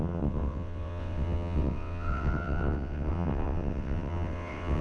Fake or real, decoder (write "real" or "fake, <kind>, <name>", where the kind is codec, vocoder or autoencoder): fake, vocoder, WaveNeXt